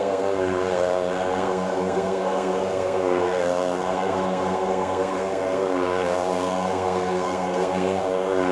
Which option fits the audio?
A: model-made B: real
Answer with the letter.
A